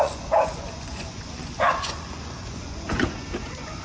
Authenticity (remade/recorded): remade